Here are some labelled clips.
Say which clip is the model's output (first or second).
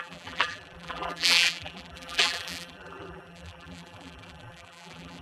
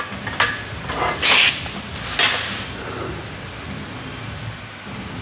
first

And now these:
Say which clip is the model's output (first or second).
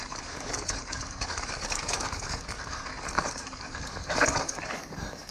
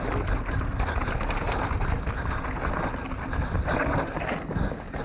first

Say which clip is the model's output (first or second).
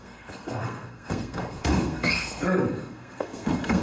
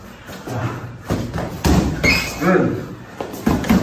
first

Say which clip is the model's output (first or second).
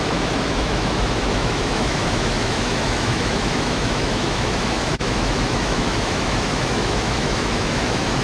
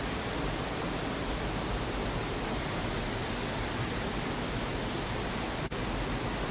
first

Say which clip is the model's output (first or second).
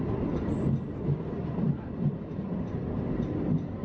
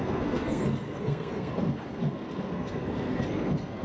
second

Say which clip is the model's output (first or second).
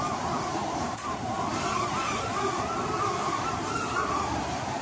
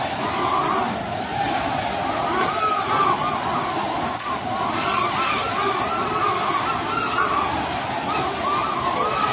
first